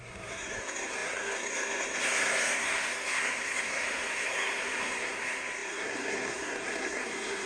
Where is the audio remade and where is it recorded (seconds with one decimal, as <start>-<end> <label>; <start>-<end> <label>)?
0.0-7.5 remade